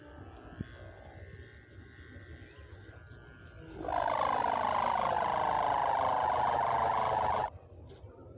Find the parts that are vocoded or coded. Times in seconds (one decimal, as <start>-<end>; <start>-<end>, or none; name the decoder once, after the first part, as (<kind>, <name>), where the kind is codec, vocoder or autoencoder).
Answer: none